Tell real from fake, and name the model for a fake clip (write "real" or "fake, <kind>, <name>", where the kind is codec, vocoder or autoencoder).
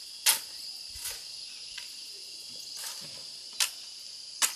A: real